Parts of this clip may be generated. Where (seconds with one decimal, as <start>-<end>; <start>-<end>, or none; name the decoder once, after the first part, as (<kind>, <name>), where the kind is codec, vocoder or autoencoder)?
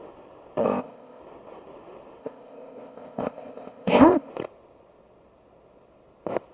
0.6-1.2 (codec, ZipCodec); 2.2-4.3